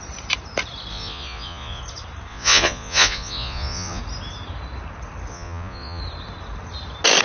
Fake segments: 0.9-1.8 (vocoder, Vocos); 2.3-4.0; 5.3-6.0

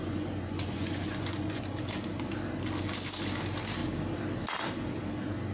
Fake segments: 0.0-1.6 (vocoder, Vocos)

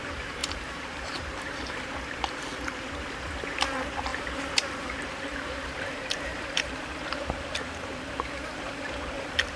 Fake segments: 0.4-1.9 (vocoder, BigVGAN v2); 4.1-9.6

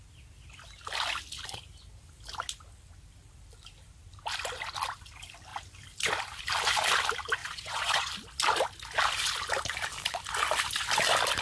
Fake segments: 7.4-8.1 (vocoder, Vocos)

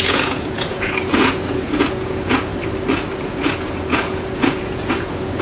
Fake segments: 0.0-2.5 (vocoder, Vocos); 3.2-5.4

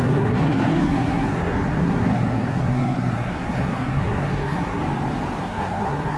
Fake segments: 0.0-4.8 (codec, SNAC); 5.4-6.2

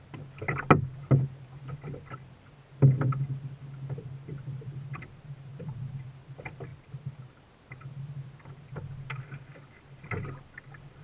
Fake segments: none